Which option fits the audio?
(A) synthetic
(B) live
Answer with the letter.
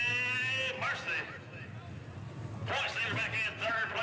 B